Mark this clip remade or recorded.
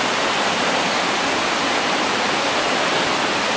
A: recorded